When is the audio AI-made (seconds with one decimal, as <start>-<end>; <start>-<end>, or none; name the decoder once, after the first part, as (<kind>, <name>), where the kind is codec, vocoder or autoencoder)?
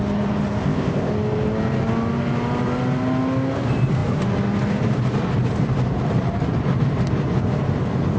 0.6-1.1 (codec, ZipCodec)